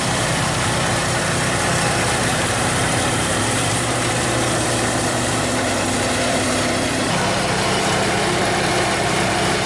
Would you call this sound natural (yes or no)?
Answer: no